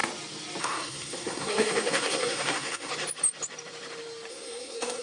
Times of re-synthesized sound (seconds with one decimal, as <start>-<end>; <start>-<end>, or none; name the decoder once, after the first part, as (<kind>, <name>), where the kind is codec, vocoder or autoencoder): 0.6-2.9 (codec, SNAC); 4.3-5.0

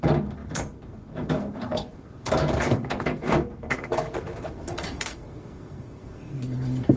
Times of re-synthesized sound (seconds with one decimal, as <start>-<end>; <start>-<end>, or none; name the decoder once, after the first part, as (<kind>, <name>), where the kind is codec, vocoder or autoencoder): 0.0-7.0 (codec, SNAC)

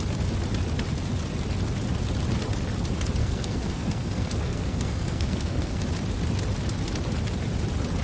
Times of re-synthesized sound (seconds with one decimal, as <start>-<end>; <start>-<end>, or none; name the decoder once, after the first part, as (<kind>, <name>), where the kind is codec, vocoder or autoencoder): 3.2-5.8 (codec, SNAC)

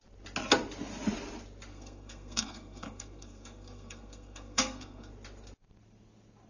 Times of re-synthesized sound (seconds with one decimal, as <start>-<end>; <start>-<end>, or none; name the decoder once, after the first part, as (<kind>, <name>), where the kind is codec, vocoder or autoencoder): 1.7-5.1 (codec, SNAC)